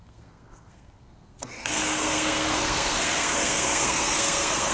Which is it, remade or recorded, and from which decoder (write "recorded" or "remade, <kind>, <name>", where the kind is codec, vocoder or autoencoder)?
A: remade, codec, SNAC